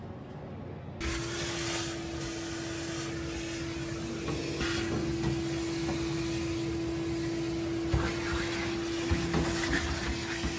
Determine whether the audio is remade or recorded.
recorded